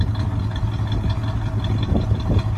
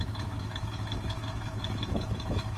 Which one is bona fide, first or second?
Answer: first